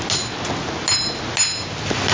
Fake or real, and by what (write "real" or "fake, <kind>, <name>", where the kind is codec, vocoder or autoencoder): real